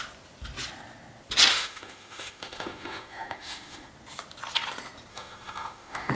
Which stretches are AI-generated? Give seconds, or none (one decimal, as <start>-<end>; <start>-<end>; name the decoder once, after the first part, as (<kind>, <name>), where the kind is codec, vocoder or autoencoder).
1.5-3.9 (autoencoder, DAC-VAE); 5.1-6.1